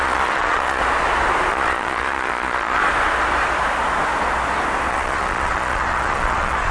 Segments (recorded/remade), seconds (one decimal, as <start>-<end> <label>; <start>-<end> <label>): 0.0-0.8 remade; 0.8-1.5 recorded; 1.5-2.8 remade; 2.8-4.9 recorded; 4.9-6.7 remade